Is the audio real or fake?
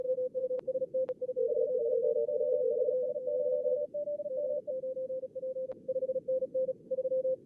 real